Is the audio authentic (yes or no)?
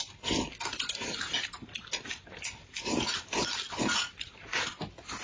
yes